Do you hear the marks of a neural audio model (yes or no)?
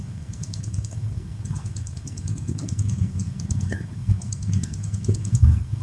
yes